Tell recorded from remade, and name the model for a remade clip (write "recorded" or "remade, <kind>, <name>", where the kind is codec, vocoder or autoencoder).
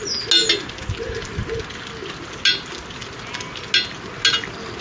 recorded